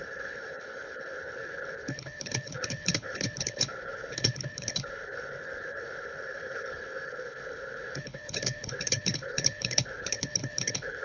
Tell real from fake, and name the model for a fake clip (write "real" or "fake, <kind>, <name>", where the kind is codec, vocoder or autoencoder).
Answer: fake, codec, HILCodec